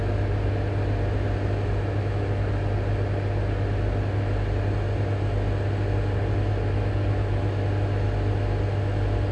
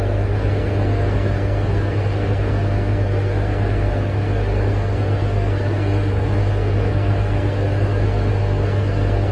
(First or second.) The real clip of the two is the first